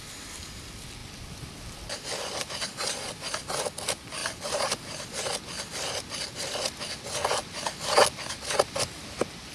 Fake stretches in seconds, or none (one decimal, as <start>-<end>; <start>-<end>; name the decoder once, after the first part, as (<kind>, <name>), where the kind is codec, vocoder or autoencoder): 1.0-3.6 (vocoder, BigVGAN v2); 4.2-5.3